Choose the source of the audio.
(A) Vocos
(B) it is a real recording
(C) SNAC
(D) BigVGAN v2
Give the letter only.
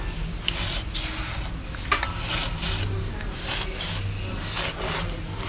B